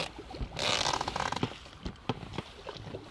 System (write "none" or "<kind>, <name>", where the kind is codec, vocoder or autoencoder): none